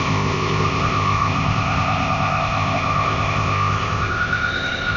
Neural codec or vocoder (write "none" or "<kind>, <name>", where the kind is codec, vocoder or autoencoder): codec, ZipCodec